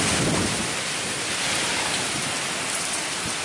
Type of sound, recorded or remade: recorded